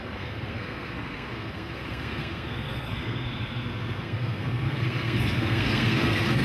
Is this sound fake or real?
fake